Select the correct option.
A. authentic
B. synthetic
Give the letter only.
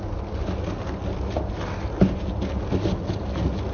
A